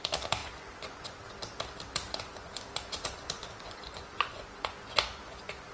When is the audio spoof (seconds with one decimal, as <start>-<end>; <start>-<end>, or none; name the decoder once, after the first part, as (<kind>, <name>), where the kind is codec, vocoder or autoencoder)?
0.4-1.2 (vocoder, Vocos); 2.0-5.7